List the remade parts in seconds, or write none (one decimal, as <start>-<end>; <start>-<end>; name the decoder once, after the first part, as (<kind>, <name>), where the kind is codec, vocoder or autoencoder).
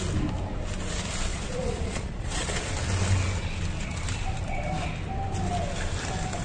1.3-2.7 (vocoder, Vocos)